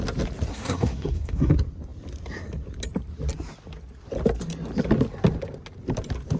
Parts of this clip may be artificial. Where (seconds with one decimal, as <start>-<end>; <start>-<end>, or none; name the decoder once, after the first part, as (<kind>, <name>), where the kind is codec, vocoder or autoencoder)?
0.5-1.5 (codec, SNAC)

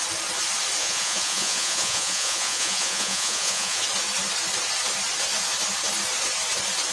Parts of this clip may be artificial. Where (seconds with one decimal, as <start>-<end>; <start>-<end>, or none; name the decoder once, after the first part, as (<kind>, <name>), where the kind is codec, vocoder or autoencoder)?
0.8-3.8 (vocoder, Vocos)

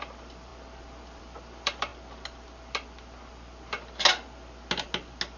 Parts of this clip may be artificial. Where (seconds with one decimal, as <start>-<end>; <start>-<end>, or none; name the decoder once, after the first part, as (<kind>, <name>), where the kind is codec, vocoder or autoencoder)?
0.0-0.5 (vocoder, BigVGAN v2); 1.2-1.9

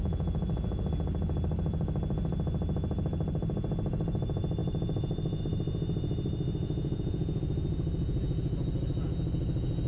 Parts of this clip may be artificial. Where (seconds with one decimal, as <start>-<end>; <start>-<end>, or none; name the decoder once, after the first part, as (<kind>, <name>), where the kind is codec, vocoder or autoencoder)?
0.0-0.9 (vocoder, Vocos); 4.6-5.4; 6.6-7.4

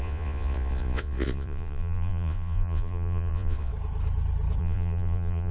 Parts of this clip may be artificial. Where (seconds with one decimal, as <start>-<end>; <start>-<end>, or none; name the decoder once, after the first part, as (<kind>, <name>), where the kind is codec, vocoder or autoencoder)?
0.0-3.7 (vocoder, Vocos); 4.6-5.5

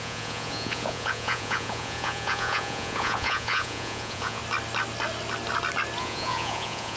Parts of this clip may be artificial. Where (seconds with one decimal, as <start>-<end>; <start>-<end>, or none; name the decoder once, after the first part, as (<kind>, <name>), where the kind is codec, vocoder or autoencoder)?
0.0-4.4 (vocoder, Vocos); 6.0-7.0

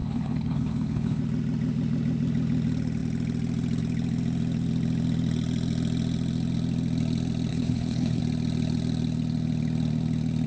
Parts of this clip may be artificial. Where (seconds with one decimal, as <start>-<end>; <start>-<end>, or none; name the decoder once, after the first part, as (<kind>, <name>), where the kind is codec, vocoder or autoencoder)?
0.0-1.2 (codec, HILCodec); 7.5-8.2